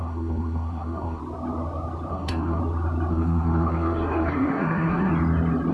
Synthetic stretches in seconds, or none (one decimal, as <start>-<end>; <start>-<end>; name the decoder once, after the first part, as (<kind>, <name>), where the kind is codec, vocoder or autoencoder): 0.0-1.2 (codec, SNAC); 2.1-2.6; 3.1-5.1